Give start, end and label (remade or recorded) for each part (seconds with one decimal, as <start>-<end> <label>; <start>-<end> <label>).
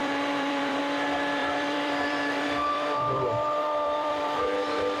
0.0-0.8 remade; 0.8-1.4 recorded; 1.4-4.4 remade; 4.4-5.0 recorded